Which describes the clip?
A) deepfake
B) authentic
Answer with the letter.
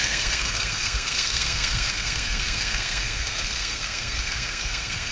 A